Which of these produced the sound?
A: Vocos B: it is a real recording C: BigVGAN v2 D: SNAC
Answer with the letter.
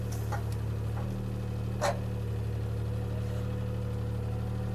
B